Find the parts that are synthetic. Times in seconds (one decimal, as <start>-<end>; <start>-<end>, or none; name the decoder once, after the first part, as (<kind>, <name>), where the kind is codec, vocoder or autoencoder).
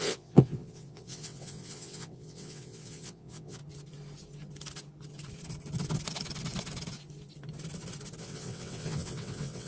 0.0-3.6 (vocoder, WaveNeXt); 8.2-9.7